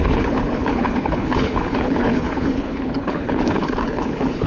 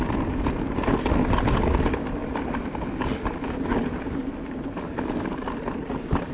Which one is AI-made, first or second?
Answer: first